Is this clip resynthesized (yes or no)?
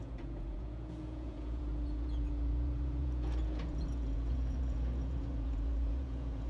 yes